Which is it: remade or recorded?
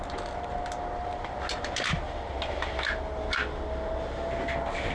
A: recorded